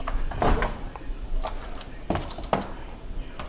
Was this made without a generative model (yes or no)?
yes